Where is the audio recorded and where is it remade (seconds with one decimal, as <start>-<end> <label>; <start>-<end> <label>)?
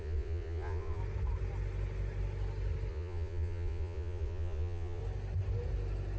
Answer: 0.0-1.0 remade; 1.0-2.9 recorded; 2.9-5.0 remade; 5.0-6.2 recorded